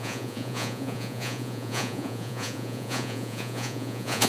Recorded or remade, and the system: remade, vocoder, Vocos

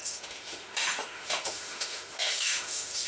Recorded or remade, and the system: remade, autoencoder, DAC-VAE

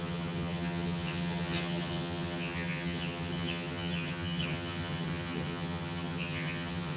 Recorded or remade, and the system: remade, vocoder, HiFi-GAN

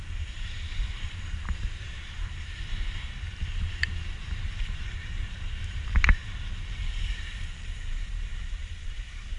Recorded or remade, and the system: remade, vocoder, BigVGAN v2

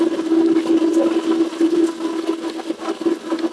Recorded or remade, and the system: recorded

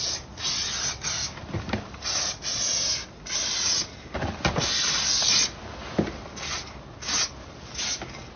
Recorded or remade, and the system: recorded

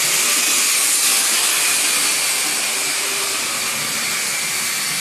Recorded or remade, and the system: recorded